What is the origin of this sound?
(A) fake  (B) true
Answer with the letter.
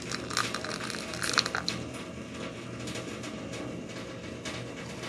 B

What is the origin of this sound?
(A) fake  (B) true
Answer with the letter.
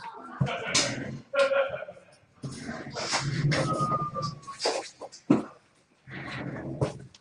B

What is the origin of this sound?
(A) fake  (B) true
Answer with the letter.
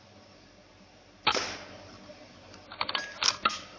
B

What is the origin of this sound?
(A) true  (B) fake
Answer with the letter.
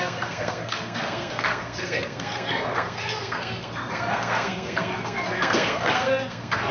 B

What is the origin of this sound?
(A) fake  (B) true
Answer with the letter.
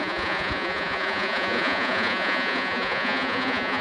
A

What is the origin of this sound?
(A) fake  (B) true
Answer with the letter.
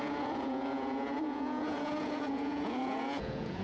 A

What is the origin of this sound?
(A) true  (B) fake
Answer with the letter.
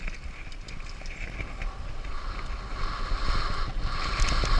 A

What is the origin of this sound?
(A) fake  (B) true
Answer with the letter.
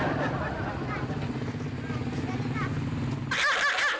B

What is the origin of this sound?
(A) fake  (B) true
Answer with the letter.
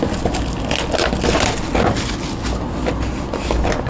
B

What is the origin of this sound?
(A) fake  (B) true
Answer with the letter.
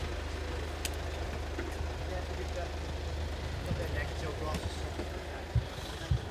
B